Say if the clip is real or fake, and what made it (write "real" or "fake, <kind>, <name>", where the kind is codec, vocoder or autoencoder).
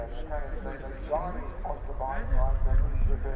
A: real